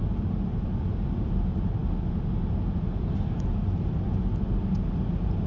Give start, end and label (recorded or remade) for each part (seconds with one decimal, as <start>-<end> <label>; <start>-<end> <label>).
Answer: 0.0-5.5 recorded